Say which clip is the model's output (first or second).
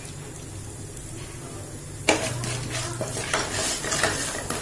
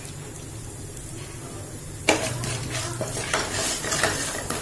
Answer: second